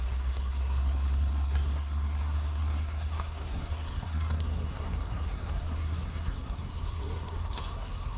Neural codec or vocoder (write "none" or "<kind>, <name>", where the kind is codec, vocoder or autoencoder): codec, SNAC